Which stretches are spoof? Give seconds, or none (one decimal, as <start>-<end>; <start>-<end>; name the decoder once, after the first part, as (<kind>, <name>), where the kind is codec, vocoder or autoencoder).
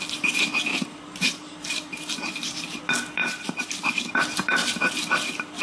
0.7-2.8 (vocoder, BigVGAN v2); 3.2-4.1